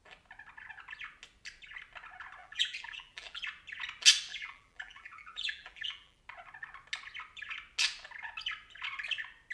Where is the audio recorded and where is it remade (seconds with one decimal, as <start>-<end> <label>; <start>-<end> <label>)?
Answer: 0.0-2.4 recorded; 2.4-3.4 remade; 3.4-4.3 recorded; 4.3-6.2 remade; 6.2-9.5 recorded